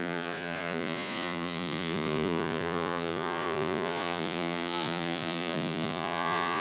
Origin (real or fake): fake